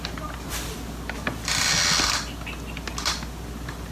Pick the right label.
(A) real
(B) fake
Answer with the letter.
A